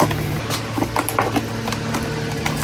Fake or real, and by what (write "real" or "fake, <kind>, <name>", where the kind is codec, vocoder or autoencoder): real